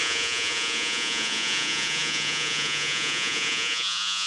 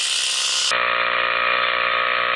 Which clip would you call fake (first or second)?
first